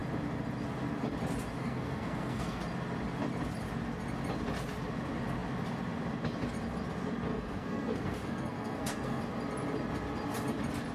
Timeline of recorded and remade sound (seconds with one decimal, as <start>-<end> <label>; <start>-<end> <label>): 0.0-1.6 recorded; 1.6-2.6 remade; 2.6-7.3 recorded; 7.3-9.2 remade; 9.2-10.9 recorded